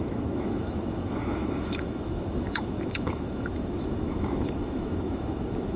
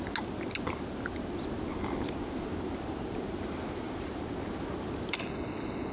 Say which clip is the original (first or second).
second